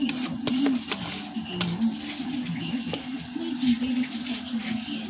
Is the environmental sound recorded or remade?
recorded